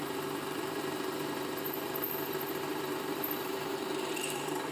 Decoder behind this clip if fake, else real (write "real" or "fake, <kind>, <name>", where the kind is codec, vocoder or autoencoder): fake, vocoder, BigVGAN v2